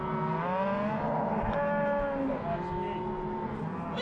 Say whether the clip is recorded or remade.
recorded